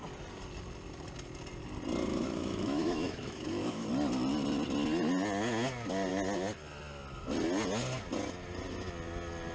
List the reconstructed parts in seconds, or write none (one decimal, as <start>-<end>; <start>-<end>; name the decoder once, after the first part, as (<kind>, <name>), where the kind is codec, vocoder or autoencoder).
2.1-3.9 (autoencoder, DAC-VAE)